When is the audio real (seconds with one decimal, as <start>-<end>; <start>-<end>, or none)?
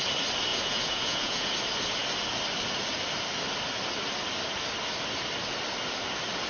0.0-0.5; 1.5-6.5